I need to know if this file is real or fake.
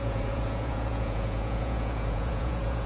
fake